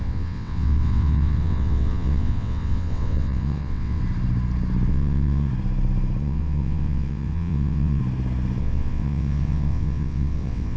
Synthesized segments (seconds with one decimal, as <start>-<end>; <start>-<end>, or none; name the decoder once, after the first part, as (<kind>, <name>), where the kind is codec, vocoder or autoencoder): 0.0-4.0 (vocoder, WaveNeXt); 4.9-5.5; 6.2-8.0; 8.6-10.8